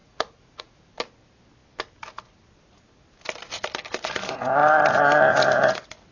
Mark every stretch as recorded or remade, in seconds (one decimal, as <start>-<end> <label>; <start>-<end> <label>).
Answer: 0.0-0.9 remade; 0.9-6.1 recorded